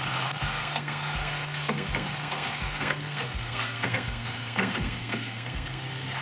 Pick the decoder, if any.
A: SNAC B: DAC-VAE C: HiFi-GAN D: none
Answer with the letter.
A